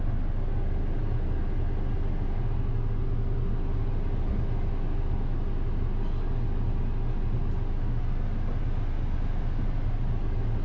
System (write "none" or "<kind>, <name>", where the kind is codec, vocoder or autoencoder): none